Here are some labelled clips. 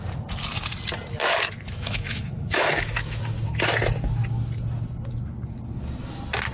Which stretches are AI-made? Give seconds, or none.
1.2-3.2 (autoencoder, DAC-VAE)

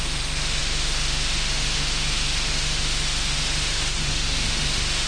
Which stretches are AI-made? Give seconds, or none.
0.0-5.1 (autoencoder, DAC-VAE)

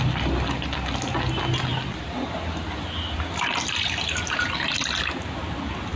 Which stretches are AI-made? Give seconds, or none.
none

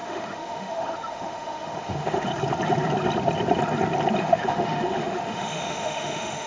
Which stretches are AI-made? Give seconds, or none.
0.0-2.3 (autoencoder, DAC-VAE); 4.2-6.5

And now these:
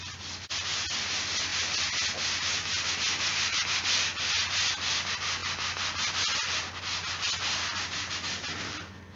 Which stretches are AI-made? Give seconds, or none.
none

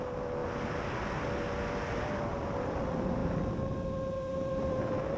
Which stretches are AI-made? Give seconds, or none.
none

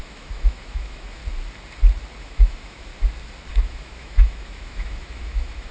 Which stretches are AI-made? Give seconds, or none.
0.0-1.2 (autoencoder, DAC-VAE); 2.2-2.9; 3.5-5.7